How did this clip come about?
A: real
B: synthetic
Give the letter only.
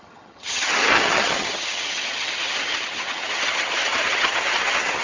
B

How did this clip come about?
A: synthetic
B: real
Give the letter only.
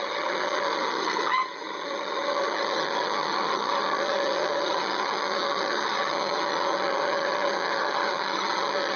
A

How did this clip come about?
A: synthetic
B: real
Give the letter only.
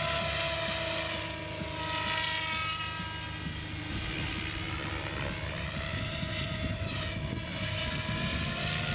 B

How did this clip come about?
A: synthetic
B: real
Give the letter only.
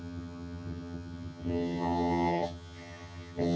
A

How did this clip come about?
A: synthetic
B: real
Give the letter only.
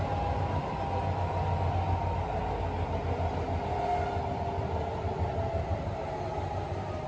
B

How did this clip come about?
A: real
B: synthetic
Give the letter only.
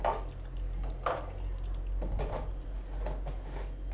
A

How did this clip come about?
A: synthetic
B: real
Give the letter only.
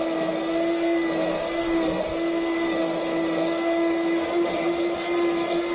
B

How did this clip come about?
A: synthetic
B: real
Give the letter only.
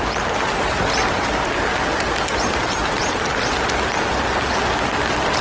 B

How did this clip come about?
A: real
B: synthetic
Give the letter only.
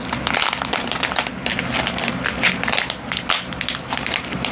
A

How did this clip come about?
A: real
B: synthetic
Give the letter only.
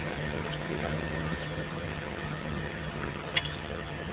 B